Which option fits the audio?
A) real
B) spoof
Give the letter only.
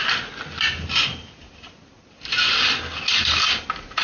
A